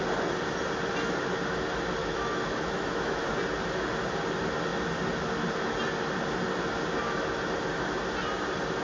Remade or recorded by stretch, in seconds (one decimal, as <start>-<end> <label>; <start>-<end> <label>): 0.0-2.0 recorded; 2.0-3.3 remade; 3.3-8.8 recorded